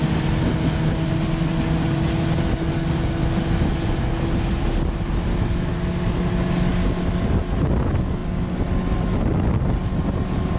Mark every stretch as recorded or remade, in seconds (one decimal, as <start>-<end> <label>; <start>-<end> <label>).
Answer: 0.0-10.6 recorded